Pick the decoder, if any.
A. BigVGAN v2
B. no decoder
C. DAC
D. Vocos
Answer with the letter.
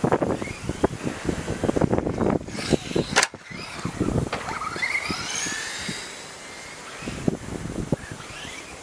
B